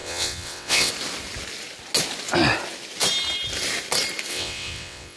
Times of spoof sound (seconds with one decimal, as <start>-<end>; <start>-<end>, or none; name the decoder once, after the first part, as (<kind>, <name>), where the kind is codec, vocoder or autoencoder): 0.0-0.9 (vocoder, WaveNeXt); 4.3-5.2